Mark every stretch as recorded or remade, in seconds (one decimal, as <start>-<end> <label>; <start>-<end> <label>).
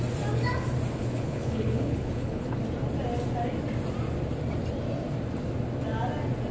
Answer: 0.0-1.0 recorded; 1.0-2.6 remade; 2.6-6.5 recorded